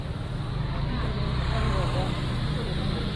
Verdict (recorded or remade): recorded